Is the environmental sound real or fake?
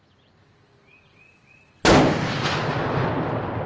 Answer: real